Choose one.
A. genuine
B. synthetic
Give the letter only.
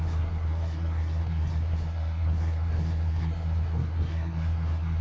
B